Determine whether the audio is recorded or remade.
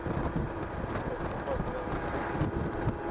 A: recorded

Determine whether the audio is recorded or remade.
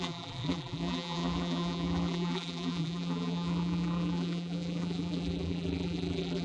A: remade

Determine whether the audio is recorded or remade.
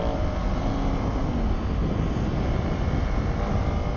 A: recorded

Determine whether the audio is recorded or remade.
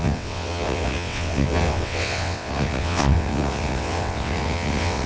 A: remade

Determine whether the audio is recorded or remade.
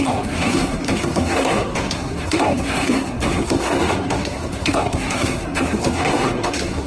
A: remade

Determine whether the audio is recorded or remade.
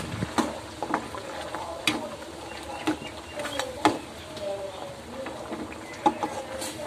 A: recorded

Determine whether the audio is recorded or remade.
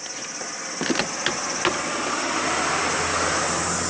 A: recorded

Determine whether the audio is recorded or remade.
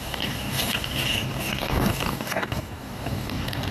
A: remade